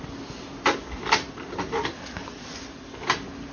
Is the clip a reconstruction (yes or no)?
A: no